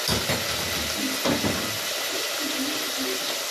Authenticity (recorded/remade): recorded